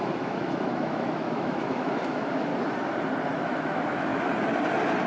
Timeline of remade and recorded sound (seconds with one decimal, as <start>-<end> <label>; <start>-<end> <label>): 0.0-2.5 remade; 2.5-3.4 recorded; 3.4-4.1 remade; 4.1-5.1 recorded